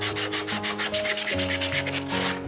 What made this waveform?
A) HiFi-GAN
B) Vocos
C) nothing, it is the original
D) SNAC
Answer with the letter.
C